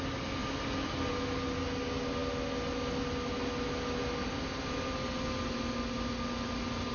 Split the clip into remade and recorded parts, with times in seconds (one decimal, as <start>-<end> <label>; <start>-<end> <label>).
0.0-6.9 recorded